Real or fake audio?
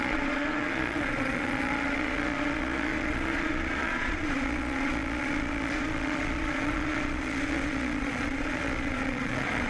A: fake